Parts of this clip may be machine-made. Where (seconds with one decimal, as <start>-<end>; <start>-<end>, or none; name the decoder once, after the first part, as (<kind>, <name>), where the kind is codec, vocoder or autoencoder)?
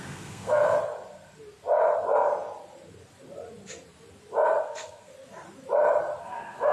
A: 0.0-0.6 (codec, SNAC); 4.6-5.1; 6.2-6.7